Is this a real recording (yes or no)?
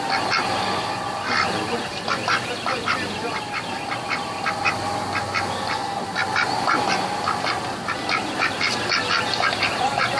yes